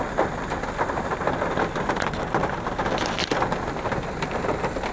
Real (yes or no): no